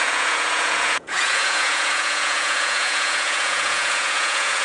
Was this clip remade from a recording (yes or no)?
yes